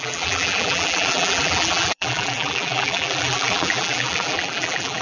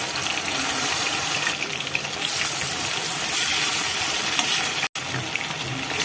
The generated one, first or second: first